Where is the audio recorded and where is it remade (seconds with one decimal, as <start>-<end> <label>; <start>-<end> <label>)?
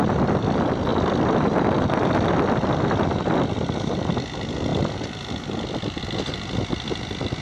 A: 0.0-7.4 recorded